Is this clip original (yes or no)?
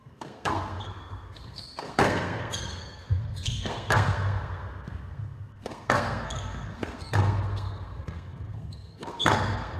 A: no